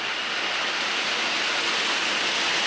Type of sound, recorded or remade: recorded